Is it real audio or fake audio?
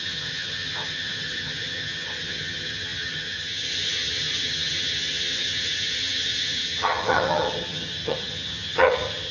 fake